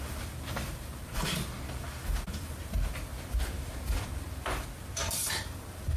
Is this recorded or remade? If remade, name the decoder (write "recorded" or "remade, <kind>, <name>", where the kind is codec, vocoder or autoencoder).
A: remade, vocoder, BigVGAN v2